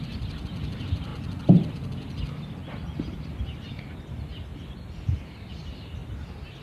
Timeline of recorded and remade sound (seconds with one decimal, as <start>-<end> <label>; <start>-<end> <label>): 0.0-6.6 recorded